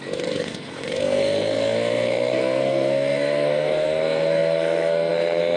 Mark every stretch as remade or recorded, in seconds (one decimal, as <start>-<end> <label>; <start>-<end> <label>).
0.0-5.6 remade